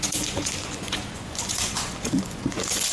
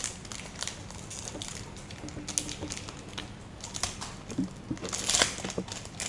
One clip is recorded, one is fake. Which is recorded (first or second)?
second